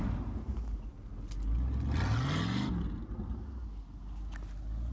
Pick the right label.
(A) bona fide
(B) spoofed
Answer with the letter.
A